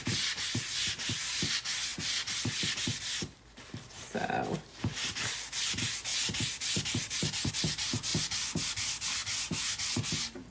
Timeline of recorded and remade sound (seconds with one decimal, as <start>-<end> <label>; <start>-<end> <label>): 0.0-10.5 recorded